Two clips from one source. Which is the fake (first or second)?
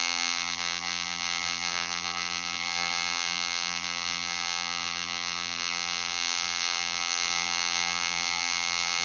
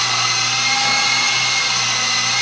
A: first